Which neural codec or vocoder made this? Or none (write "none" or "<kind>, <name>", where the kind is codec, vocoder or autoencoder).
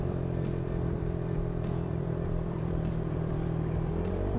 vocoder, BigVGAN v2